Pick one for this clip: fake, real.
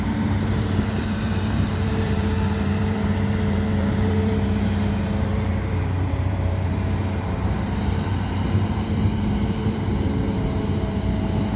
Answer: fake